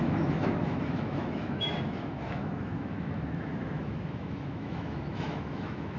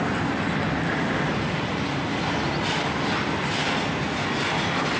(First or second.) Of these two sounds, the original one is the second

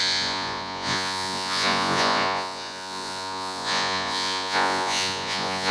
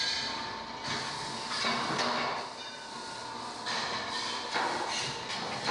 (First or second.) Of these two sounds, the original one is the second